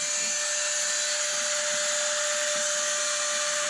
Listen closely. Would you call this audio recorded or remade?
recorded